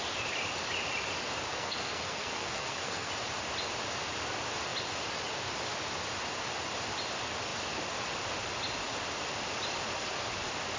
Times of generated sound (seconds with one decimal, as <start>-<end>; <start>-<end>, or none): 1.5-3.1